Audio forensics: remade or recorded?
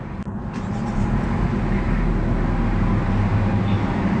recorded